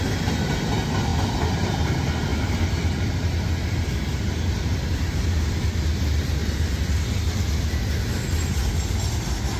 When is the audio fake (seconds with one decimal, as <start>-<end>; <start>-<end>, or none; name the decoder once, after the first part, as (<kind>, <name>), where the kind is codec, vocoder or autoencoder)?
none